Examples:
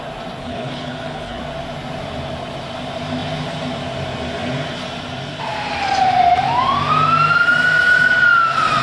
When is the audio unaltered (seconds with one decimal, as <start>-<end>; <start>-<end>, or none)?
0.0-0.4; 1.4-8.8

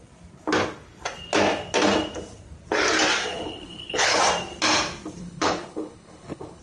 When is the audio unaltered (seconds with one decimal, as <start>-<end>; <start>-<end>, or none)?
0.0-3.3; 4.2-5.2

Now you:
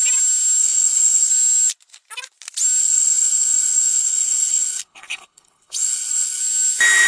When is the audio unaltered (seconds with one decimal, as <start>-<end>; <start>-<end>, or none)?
0.0-0.6; 1.3-2.8; 6.4-7.1

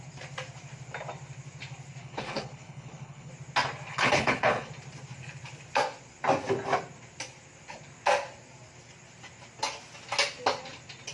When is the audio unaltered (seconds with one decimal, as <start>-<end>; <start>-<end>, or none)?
0.0-2.0; 3.3-3.9; 4.7-11.1

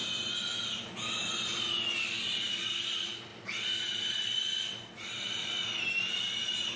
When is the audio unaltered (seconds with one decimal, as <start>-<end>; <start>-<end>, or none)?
0.0-6.8

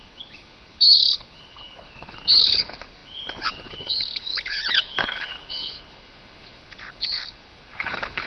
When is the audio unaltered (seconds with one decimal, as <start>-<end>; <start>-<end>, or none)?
none

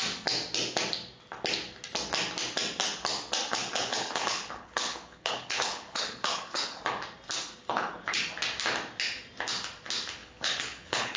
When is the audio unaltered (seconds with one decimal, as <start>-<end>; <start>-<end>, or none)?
0.0-3.6; 6.8-7.6; 8.2-10.2